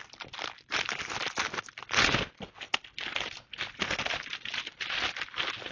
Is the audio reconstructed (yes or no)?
no